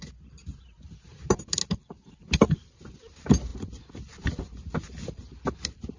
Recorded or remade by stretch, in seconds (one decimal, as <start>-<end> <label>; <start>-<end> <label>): 0.0-6.0 recorded